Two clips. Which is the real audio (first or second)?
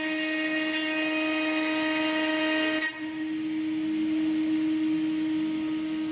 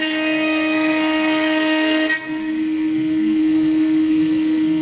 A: first